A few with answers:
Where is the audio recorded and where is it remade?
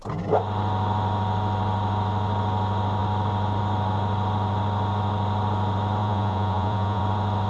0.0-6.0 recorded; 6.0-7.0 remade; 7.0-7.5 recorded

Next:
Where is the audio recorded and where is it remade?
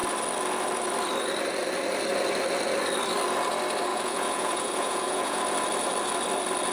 0.0-3.9 recorded; 3.9-5.4 remade; 5.4-6.7 recorded